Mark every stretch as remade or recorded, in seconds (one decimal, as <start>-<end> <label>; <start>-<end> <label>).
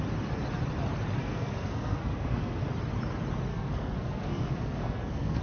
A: 0.0-1.2 recorded; 1.2-2.7 remade; 2.7-3.5 recorded; 3.5-5.4 remade